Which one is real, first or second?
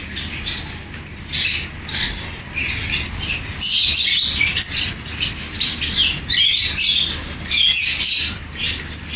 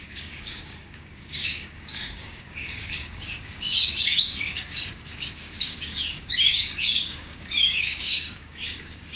first